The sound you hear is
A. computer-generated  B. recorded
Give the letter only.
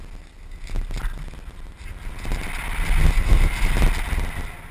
B